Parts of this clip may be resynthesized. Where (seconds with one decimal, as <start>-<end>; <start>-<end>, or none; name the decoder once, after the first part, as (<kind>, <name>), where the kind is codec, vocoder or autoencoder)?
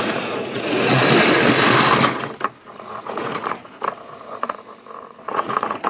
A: 0.0-1.0 (vocoder, Vocos); 2.7-5.9